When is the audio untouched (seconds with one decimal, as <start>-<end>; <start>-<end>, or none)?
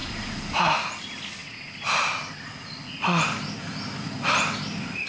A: 0.6-5.1